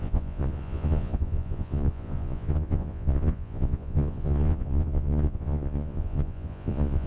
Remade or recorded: remade